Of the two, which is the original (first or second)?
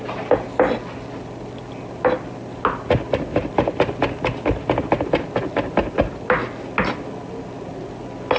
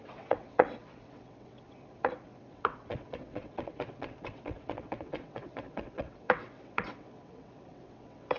first